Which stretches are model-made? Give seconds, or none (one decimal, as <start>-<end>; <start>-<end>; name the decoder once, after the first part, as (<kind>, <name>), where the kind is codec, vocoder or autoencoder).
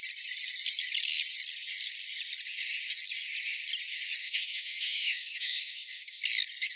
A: 4.2-6.2 (autoencoder, DAC-VAE)